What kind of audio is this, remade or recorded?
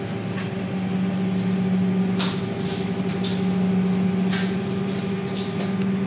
recorded